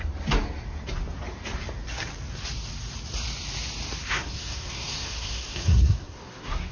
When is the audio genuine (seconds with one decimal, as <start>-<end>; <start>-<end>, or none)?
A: 0.0-4.0